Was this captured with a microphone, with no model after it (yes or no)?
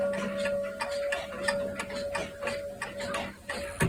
yes